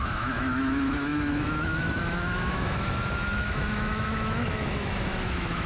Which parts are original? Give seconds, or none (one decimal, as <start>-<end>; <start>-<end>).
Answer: none